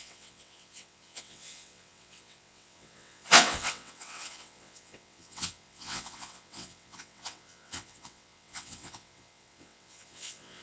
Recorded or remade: remade